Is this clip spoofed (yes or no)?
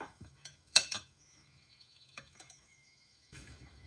yes